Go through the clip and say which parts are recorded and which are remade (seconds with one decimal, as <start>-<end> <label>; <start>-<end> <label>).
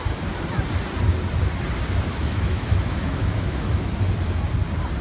0.0-2.1 recorded; 2.1-3.9 remade; 3.9-5.0 recorded